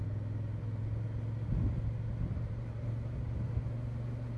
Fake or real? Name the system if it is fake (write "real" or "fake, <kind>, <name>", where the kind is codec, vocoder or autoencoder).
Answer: real